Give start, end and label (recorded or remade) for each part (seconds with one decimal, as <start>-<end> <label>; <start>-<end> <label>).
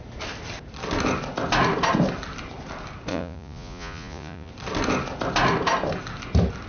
0.0-3.1 recorded; 3.1-4.5 remade; 4.5-6.7 recorded